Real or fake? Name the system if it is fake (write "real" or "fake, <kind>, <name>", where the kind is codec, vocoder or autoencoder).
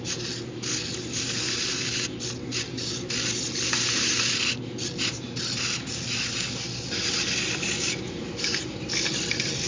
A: real